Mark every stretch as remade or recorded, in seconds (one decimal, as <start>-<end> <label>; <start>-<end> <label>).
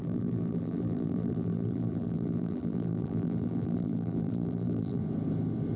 0.0-5.0 remade; 5.0-5.8 recorded